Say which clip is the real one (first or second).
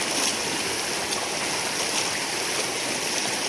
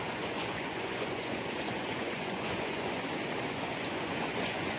first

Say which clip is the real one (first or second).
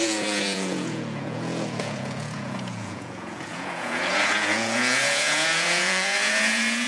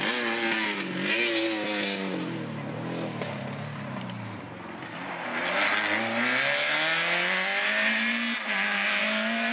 second